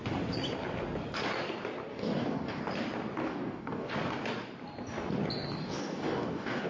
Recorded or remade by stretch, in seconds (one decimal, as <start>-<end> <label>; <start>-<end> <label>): 0.0-1.9 recorded; 1.9-2.6 remade; 2.6-3.2 recorded; 3.2-3.9 remade; 3.9-5.6 recorded; 5.6-6.7 remade